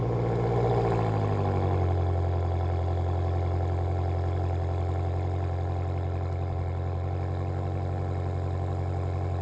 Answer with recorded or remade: recorded